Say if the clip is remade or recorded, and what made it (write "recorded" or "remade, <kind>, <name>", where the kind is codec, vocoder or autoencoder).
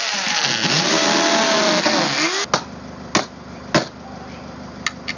recorded